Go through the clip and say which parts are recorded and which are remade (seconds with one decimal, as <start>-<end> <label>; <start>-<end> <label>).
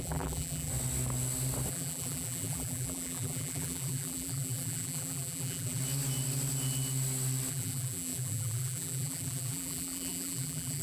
0.0-0.7 remade; 0.7-1.7 recorded; 1.7-5.8 remade; 5.8-7.5 recorded; 7.5-10.8 remade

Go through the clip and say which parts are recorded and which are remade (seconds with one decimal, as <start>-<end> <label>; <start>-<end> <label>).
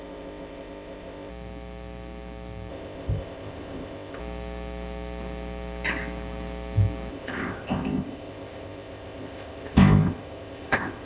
0.0-1.3 remade; 1.3-2.7 recorded; 2.7-4.2 remade; 4.2-7.1 recorded; 7.1-11.1 remade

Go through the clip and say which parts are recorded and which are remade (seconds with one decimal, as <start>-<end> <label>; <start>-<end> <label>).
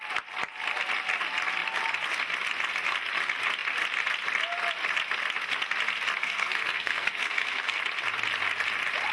0.0-6.2 recorded; 6.2-7.8 remade; 7.8-9.1 recorded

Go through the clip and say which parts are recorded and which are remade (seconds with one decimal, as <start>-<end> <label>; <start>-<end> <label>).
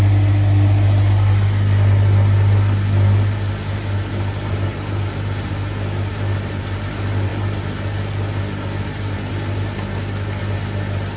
0.0-11.2 recorded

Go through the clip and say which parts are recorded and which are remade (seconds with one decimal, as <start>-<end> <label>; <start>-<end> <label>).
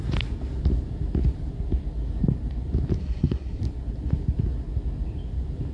0.0-3.0 recorded; 3.0-3.6 remade; 3.6-5.7 recorded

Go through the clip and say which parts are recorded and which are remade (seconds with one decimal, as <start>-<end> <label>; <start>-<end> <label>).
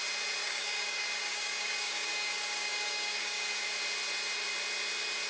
0.0-0.4 recorded; 0.4-3.6 remade; 3.6-5.3 recorded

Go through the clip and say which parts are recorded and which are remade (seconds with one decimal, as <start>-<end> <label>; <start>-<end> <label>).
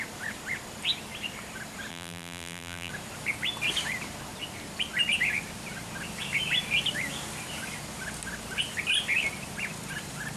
0.0-1.9 recorded; 1.9-2.9 remade; 2.9-10.4 recorded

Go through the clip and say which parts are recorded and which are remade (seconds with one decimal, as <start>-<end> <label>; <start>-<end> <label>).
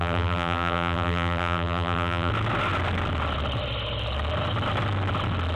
0.0-2.3 remade; 2.3-5.6 recorded